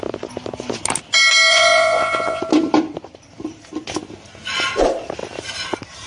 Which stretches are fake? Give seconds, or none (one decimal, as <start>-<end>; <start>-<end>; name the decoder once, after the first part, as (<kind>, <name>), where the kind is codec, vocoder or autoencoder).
1.5-2.4 (vocoder, Vocos)

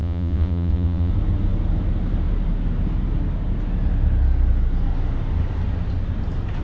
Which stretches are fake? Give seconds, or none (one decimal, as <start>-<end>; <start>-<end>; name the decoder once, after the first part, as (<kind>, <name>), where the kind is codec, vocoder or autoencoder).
0.0-1.1 (vocoder, Vocos)